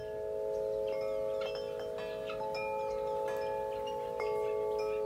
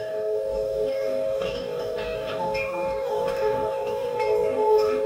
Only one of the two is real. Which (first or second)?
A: first